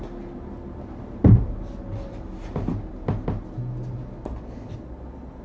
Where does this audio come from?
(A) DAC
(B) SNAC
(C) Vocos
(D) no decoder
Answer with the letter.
D